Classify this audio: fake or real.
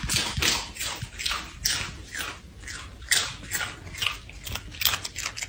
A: real